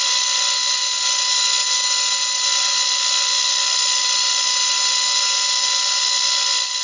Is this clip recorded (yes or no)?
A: yes